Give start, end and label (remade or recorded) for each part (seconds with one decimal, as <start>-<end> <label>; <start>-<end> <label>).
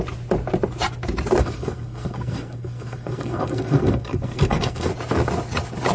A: 0.0-1.4 recorded; 1.4-4.9 remade; 4.9-5.9 recorded